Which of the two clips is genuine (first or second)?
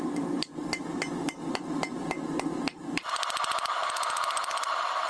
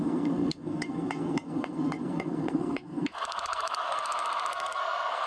first